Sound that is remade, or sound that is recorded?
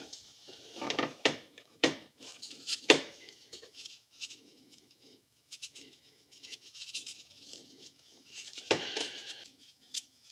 remade